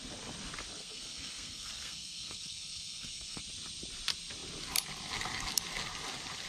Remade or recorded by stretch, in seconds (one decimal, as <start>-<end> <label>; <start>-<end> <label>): 0.0-0.8 recorded; 0.8-3.4 remade; 3.4-6.5 recorded

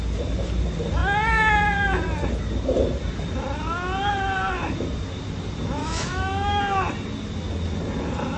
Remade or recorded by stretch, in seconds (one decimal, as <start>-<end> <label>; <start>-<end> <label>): 0.0-5.8 recorded; 5.8-6.6 remade; 6.6-8.4 recorded